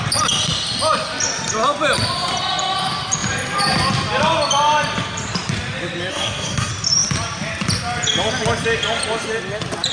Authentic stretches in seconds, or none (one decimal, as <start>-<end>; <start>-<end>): 0.0-6.1; 6.7-9.9